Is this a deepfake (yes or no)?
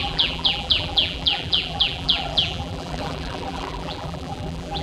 yes